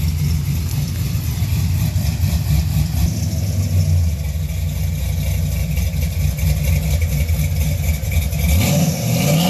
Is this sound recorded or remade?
recorded